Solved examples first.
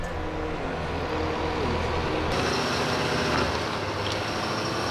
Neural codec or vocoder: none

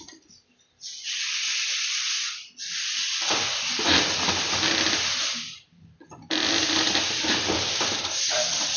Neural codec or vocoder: vocoder, BigVGAN v2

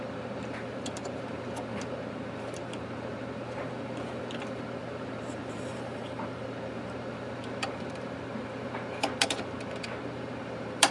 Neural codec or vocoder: vocoder, BigVGAN v2